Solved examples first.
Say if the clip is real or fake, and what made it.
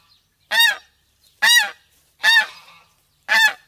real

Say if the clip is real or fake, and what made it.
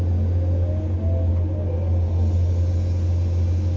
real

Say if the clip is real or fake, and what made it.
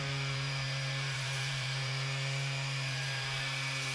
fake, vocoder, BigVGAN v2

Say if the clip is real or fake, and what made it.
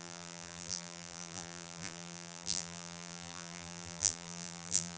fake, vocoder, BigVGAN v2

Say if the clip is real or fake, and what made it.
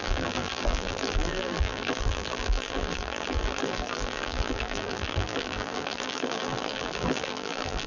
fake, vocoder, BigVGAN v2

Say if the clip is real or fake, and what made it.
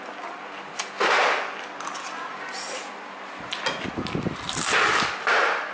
real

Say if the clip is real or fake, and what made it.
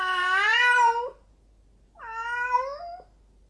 real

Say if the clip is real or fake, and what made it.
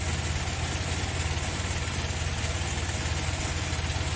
real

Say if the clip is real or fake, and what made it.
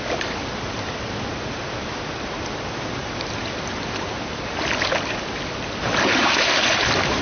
fake, vocoder, BigVGAN v2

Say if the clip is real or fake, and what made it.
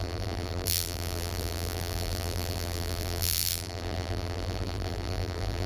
fake, vocoder, BigVGAN v2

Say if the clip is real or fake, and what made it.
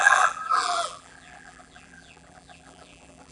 fake, vocoder, BigVGAN v2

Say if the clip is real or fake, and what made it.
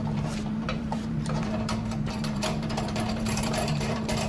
fake, vocoder, BigVGAN v2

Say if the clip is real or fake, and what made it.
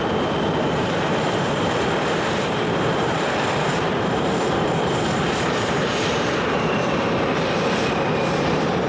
fake, vocoder, BigVGAN v2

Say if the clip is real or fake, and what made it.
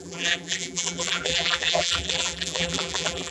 fake, vocoder, BigVGAN v2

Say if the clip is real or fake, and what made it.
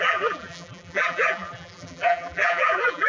fake, vocoder, BigVGAN v2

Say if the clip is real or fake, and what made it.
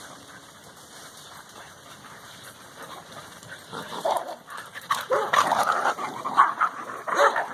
fake, vocoder, BigVGAN v2